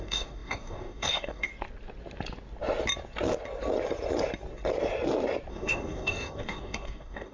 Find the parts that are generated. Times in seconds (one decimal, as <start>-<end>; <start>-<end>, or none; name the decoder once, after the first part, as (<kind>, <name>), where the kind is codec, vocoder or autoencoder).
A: 0.0-1.5 (codec, DAC); 5.5-7.3